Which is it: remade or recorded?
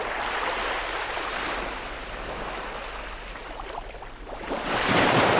recorded